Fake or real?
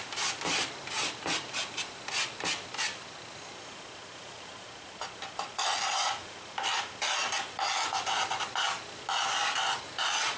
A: real